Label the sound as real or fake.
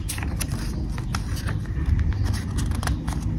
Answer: real